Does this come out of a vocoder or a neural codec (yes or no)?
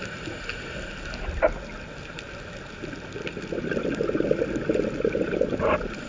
no